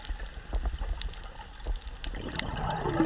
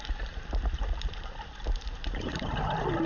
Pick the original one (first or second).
first